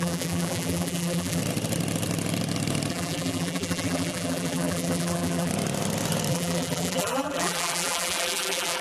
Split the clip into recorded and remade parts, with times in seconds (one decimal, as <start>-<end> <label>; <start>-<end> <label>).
0.0-1.4 remade; 1.4-2.9 recorded; 2.9-5.5 remade; 5.5-6.3 recorded; 6.3-8.8 remade